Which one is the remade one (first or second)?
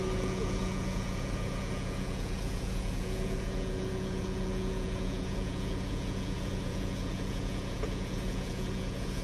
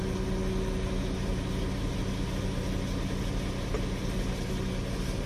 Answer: first